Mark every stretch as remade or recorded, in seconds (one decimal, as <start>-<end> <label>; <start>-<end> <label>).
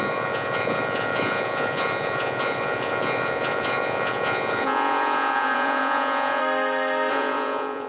0.0-6.4 remade; 6.4-7.1 recorded; 7.1-7.9 remade